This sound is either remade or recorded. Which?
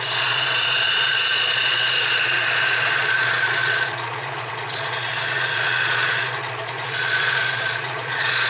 remade